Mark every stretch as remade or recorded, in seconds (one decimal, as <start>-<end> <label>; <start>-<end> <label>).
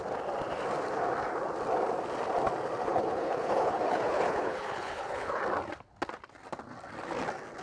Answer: 0.0-2.9 recorded; 2.9-5.4 remade; 5.4-7.6 recorded